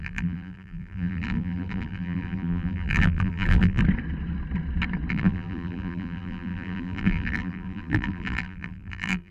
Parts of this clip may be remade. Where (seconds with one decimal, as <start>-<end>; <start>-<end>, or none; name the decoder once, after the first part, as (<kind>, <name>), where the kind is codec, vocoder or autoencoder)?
0.0-3.8 (vocoder, BigVGAN v2); 5.1-9.3